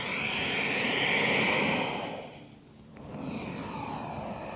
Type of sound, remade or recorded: remade